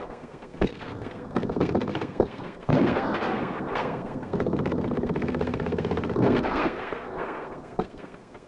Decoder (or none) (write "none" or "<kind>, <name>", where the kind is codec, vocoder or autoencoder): codec, SNAC